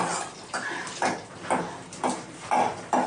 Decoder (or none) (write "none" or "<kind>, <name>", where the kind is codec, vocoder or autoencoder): none